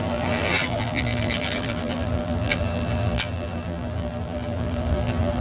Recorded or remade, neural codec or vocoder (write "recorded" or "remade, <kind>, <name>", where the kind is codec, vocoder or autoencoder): remade, vocoder, BigVGAN v2